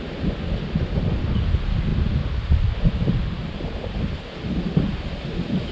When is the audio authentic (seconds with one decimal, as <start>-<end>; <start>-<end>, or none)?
0.0-1.9; 5.3-5.7